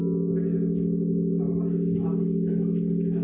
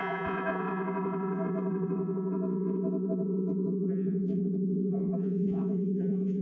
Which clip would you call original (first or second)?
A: first